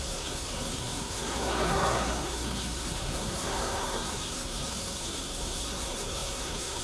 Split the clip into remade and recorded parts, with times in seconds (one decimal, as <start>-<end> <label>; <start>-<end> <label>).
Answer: 0.0-6.8 remade